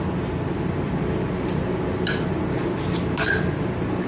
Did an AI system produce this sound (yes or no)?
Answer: no